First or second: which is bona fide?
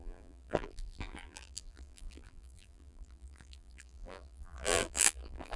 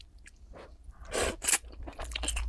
second